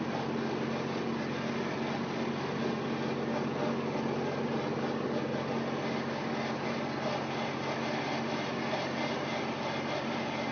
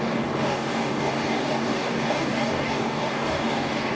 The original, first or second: first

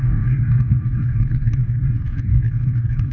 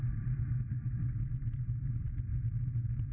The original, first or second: second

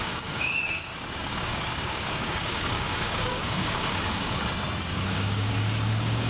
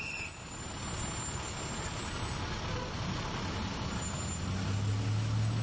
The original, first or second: second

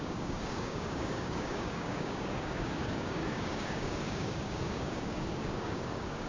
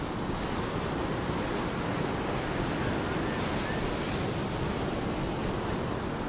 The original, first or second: second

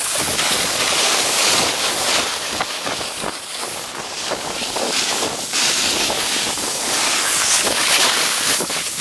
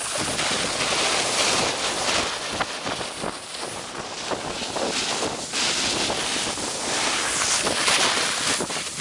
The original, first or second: second